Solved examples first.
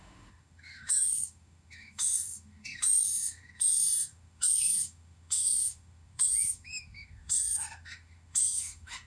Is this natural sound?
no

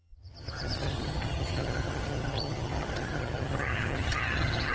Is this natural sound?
no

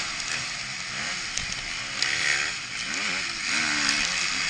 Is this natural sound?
yes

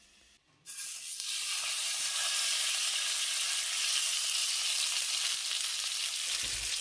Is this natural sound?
yes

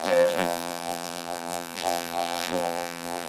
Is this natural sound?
no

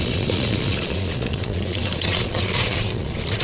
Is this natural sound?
no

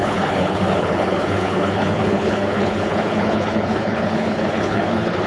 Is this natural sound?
no